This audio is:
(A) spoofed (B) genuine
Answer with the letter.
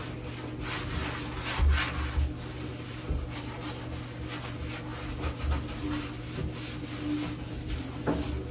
B